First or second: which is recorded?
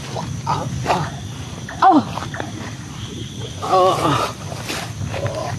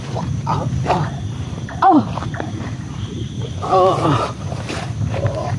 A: first